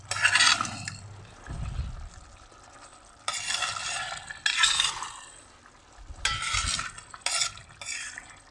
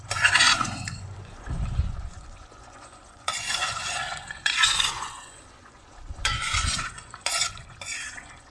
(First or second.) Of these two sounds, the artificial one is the second